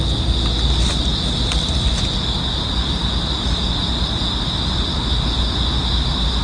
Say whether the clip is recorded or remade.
recorded